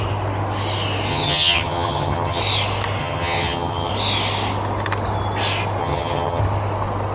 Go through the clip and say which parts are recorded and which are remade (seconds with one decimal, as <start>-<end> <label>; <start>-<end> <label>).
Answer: 0.0-1.1 recorded; 1.1-2.4 remade; 2.4-3.0 recorded; 3.0-3.9 remade; 3.9-5.8 recorded; 5.8-6.4 remade; 6.4-7.1 recorded